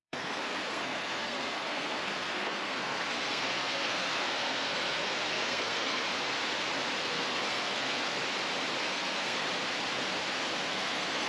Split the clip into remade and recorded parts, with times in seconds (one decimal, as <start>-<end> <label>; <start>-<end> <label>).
0.0-6.0 remade; 6.0-7.0 recorded; 7.0-8.2 remade; 8.2-8.8 recorded; 8.8-9.4 remade; 9.4-10.7 recorded; 10.7-11.3 remade